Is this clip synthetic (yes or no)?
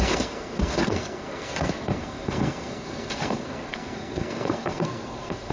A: yes